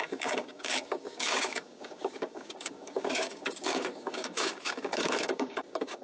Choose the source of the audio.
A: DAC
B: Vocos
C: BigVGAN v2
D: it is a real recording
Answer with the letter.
A